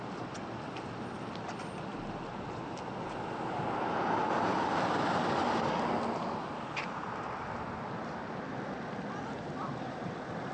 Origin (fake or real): real